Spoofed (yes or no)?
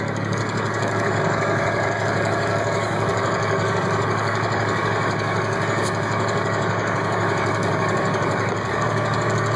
yes